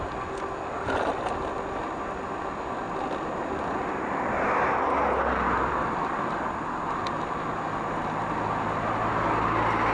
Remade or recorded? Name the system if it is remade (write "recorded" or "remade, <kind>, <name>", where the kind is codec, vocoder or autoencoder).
recorded